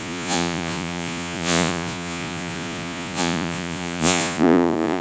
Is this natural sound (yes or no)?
no